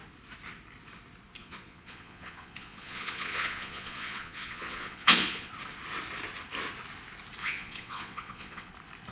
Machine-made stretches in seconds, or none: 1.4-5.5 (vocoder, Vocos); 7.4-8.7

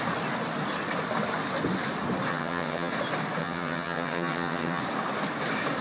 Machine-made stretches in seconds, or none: 2.3-2.9 (vocoder, HiFi-GAN); 3.4-4.8

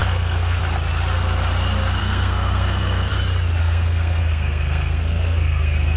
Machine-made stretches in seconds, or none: 0.0-0.6 (codec, SNAC); 2.0-3.1; 3.6-6.0

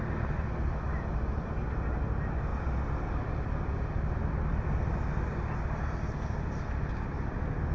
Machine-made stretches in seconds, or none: none

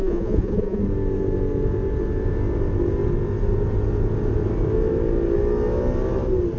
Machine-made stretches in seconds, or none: 0.0-0.8 (vocoder, Vocos)

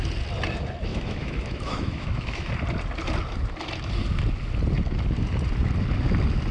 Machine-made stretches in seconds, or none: 0.9-2.5 (autoencoder, DAC-VAE)